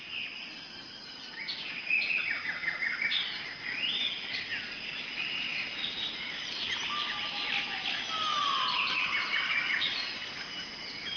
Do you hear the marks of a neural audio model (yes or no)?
no